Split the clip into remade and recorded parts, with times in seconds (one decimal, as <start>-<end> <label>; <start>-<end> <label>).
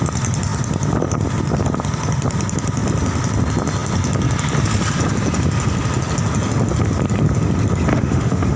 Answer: 0.0-7.9 recorded; 7.9-8.6 remade